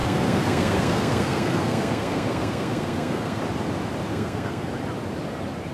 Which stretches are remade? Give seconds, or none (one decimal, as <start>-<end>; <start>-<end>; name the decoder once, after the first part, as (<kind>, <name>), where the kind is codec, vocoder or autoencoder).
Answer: 0.0-3.4 (codec, SNAC); 4.1-4.7

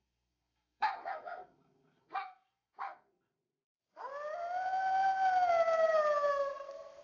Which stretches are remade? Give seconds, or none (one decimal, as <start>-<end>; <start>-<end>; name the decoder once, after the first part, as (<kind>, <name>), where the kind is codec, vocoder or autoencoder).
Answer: 0.0-4.1 (codec, SNAC); 6.3-7.0